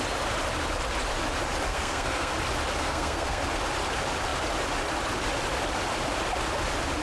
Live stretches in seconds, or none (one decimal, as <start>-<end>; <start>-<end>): 0.0-1.7; 2.3-2.8; 3.4-7.0